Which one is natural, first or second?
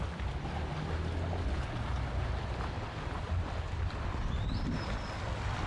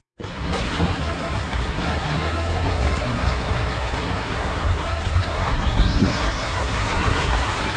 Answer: first